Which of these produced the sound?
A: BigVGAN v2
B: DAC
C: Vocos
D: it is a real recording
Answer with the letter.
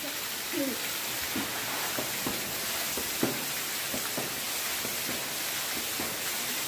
D